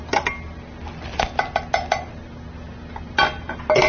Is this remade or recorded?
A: recorded